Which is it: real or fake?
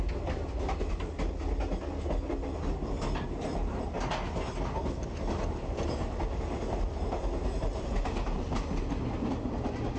real